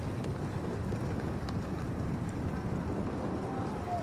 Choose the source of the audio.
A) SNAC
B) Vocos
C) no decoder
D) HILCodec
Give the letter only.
C